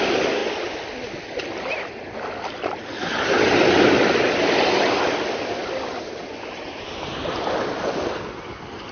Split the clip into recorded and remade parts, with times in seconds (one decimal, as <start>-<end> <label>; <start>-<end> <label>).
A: 0.0-8.9 recorded